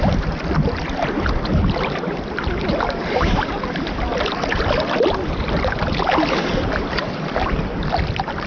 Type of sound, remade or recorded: recorded